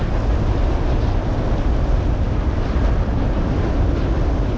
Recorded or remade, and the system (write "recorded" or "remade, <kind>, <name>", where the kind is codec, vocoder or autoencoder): recorded